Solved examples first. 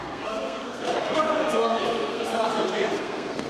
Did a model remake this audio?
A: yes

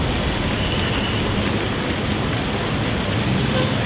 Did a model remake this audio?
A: no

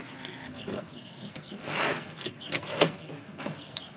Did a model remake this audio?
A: yes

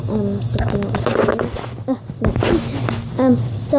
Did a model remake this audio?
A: no